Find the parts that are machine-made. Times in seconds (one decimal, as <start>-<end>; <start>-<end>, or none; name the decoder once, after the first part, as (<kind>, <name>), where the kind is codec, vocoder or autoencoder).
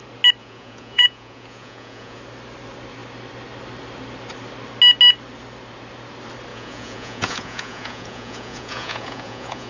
0.4-2.2 (vocoder, Vocos); 6.5-9.7